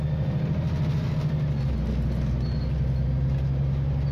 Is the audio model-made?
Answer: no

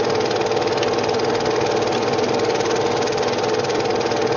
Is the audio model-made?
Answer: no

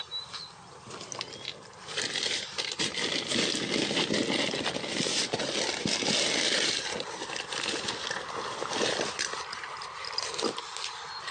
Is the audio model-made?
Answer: no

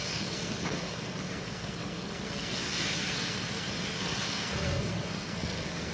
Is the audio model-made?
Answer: yes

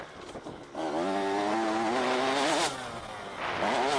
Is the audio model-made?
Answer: no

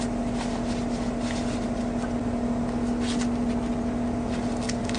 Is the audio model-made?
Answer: no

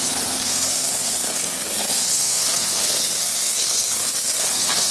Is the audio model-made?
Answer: yes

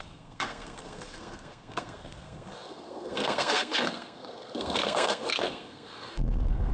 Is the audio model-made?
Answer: yes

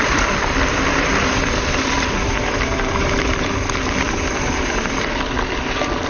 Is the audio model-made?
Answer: yes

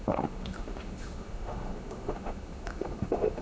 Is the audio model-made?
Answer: yes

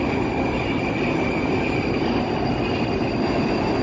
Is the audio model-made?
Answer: no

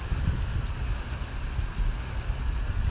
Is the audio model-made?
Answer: no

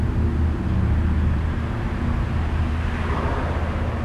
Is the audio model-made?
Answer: no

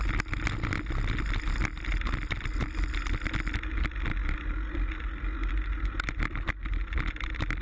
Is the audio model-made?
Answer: no